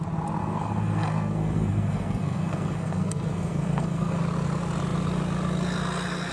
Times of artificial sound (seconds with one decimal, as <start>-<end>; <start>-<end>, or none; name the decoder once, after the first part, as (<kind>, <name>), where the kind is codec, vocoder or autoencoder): 0.4-4.2 (codec, SNAC)